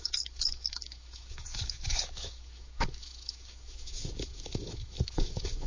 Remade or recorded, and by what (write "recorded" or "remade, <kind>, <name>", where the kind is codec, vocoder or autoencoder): remade, autoencoder, DAC-VAE